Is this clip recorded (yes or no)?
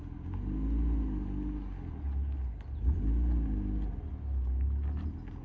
yes